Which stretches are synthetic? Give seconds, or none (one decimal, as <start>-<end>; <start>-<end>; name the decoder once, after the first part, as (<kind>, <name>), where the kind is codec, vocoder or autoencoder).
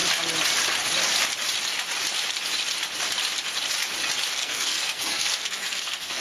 4.4-6.2 (codec, SNAC)